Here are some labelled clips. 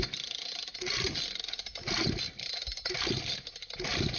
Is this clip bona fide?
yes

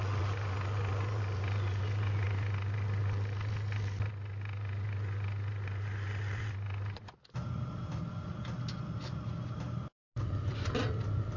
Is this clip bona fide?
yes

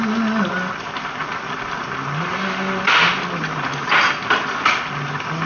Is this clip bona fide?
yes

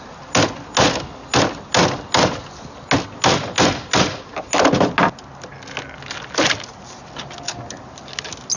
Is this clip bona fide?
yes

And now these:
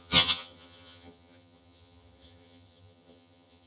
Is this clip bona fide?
no